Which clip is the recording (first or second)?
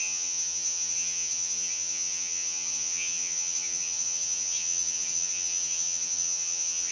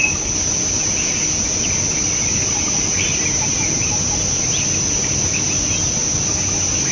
second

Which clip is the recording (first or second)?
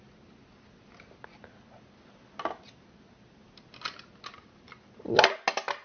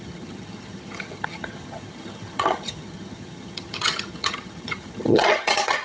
first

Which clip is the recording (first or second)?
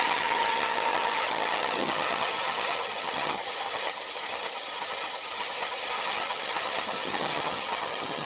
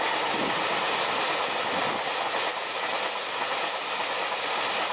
second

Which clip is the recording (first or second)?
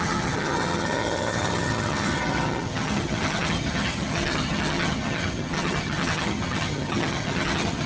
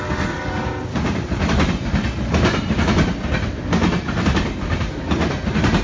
second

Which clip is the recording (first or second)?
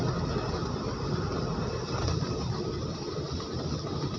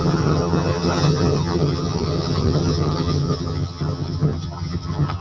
first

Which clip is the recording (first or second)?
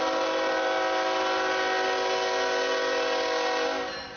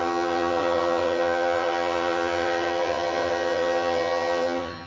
first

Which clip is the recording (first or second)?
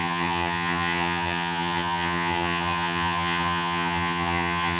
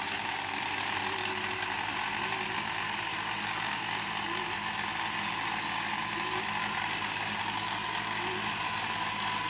second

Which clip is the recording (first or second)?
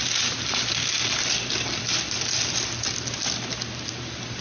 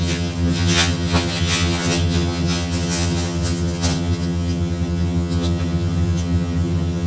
first